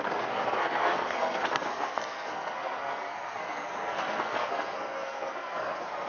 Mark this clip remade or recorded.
remade